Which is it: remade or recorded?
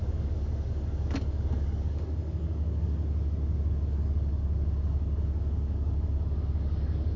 remade